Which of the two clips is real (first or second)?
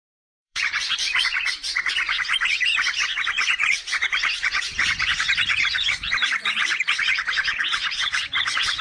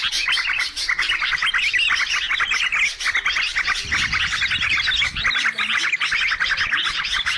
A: second